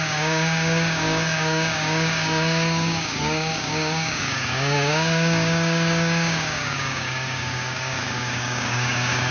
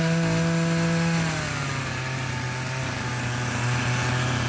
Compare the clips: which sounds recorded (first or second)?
second